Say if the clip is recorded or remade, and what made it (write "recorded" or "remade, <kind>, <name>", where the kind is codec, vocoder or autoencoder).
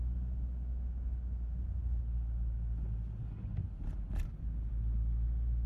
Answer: recorded